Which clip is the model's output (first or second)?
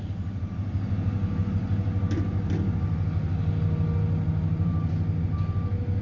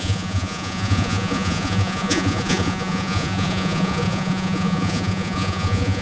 second